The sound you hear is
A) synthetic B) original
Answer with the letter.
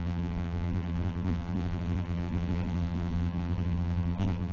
A